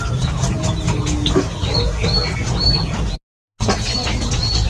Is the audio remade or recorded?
recorded